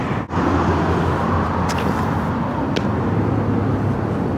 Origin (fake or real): real